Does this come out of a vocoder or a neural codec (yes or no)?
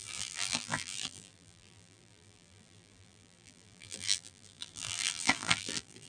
yes